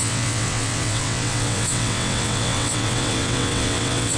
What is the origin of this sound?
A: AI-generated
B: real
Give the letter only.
A